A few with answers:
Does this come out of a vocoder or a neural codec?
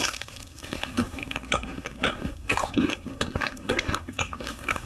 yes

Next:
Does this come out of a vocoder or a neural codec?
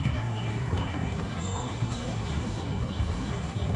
yes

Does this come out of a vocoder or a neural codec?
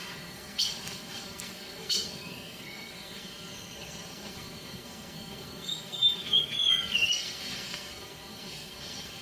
yes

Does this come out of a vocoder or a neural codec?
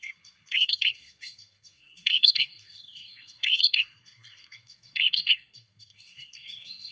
yes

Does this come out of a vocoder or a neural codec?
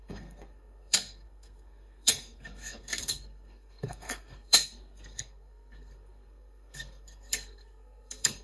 yes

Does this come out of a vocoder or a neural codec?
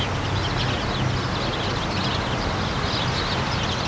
no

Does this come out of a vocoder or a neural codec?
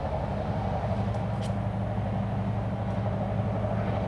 no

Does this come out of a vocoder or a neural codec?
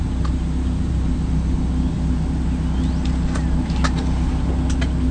no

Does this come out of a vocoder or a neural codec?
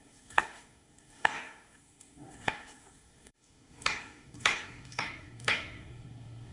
yes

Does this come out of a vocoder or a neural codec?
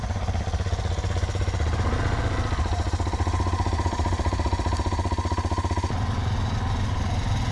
no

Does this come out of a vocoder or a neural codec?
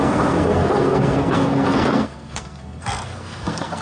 yes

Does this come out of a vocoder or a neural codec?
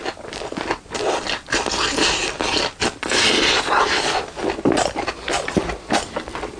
no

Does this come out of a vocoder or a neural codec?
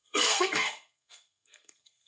yes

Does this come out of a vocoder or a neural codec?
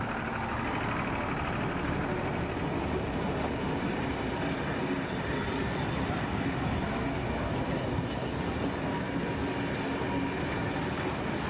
no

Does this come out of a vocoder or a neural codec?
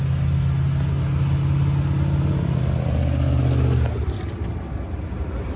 no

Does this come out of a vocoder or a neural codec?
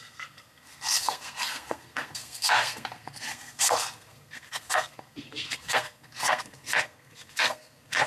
yes